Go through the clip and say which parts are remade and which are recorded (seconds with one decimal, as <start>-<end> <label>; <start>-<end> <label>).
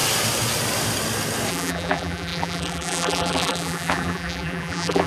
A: 0.0-1.5 recorded; 1.5-5.1 remade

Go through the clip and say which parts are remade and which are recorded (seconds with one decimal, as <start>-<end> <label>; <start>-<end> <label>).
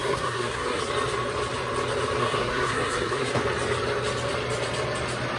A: 0.0-0.8 remade; 0.8-2.2 recorded; 2.2-3.3 remade; 3.3-5.4 recorded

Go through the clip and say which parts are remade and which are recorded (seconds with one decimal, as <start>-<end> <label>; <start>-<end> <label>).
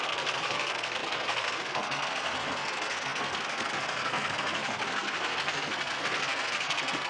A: 0.0-7.1 remade